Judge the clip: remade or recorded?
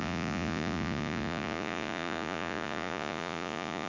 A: remade